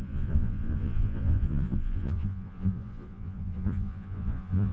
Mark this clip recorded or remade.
remade